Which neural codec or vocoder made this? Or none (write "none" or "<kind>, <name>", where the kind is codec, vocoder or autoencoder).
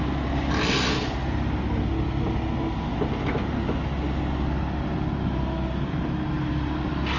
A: none